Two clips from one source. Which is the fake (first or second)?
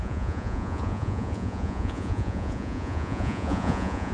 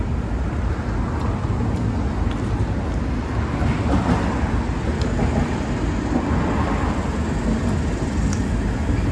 first